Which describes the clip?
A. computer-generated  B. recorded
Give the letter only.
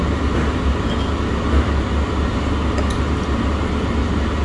B